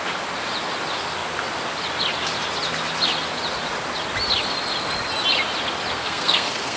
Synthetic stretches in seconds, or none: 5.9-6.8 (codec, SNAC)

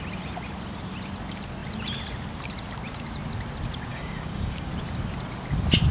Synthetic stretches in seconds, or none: 3.9-4.7 (codec, DAC)

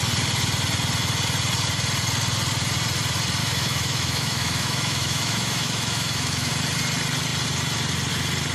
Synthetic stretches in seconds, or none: 3.4-6.5 (autoencoder, DAC-VAE)

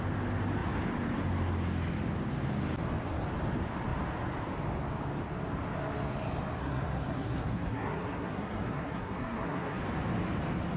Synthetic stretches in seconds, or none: 6.6-9.8 (codec, SNAC)

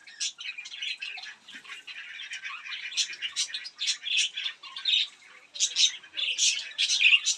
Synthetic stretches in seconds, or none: none